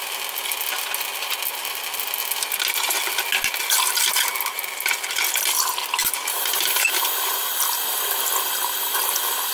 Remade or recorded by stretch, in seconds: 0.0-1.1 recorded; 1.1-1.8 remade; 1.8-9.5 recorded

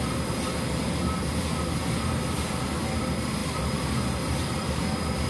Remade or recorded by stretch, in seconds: 0.0-1.8 recorded; 1.8-2.5 remade; 2.5-3.4 recorded; 3.4-4.8 remade; 4.8-5.3 recorded